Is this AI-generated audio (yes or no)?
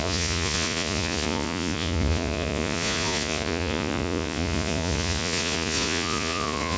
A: yes